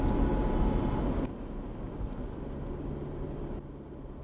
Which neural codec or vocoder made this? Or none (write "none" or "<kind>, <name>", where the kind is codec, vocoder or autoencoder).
none